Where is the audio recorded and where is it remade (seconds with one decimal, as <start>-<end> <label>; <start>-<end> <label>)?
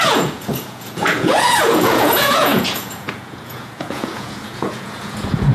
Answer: 0.0-5.5 remade